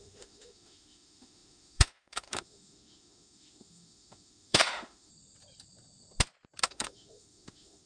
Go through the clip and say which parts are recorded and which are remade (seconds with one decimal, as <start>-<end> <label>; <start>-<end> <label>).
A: 0.0-5.1 remade; 5.1-6.6 recorded; 6.6-7.9 remade